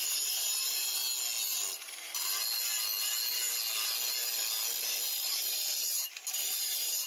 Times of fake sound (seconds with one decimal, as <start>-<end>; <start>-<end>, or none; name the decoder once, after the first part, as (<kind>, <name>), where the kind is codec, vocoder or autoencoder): 0.0-1.0 (vocoder, BigVGAN v2); 4.9-7.1